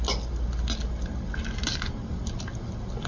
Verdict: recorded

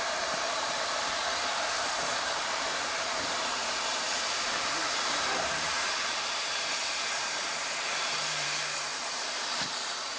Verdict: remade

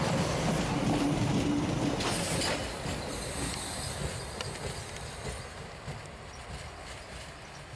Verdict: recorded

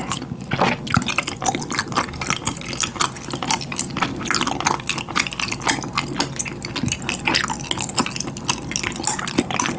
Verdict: recorded